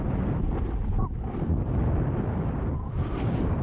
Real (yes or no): yes